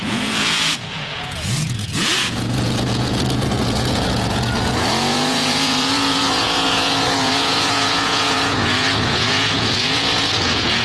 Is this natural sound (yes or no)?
no